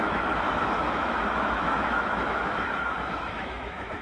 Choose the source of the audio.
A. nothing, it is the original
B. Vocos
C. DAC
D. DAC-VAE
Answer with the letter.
D